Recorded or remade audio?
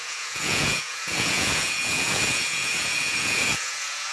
remade